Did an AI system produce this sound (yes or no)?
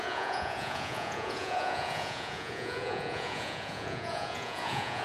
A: yes